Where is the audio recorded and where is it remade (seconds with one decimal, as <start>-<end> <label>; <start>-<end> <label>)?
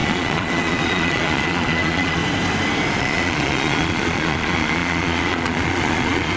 0.0-2.2 remade; 2.2-3.0 recorded; 3.0-6.4 remade